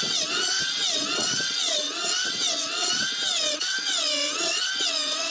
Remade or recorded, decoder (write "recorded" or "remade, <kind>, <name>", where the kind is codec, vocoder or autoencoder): remade, vocoder, WaveNeXt